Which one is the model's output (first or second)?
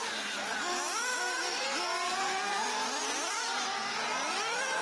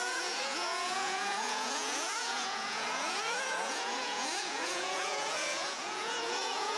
second